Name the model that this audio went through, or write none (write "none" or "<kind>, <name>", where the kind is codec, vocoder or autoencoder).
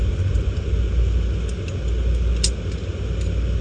none